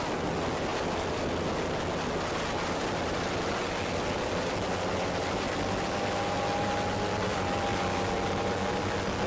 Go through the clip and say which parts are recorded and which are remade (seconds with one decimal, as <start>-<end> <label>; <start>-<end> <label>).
0.0-9.3 recorded